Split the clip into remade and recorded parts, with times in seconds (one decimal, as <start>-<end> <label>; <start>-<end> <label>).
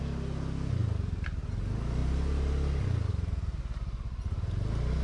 0.0-5.0 recorded